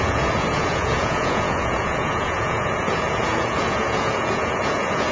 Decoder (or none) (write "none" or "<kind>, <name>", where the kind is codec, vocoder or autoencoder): vocoder, Vocos